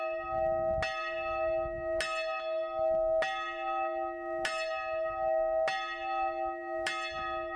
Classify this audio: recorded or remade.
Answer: recorded